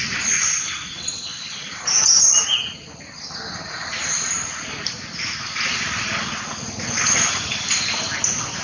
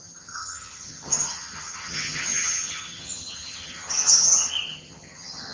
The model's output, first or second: second